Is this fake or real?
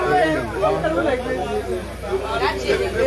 real